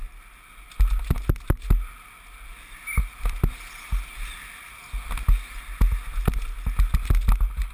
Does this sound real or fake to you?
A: real